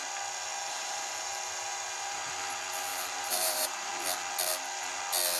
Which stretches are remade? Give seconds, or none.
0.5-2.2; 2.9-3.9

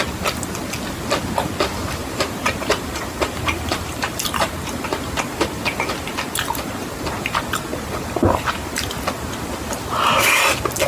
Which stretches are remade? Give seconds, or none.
2.0-6.1

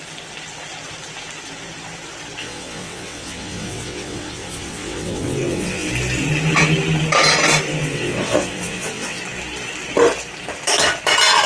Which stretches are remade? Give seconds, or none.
2.4-5.9; 7.7-9.2